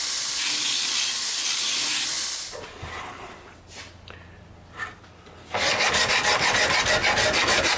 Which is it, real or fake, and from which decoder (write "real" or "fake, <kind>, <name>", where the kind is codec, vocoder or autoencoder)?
real